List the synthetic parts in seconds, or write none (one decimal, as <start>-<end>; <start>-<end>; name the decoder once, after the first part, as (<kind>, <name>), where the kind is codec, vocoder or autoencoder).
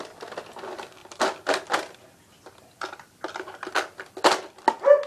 none